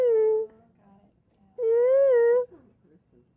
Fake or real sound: real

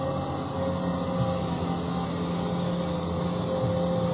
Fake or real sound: real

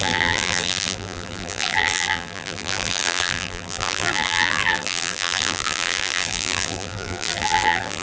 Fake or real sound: fake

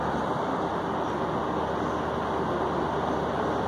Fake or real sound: real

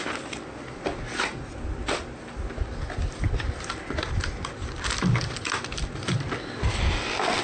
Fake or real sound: real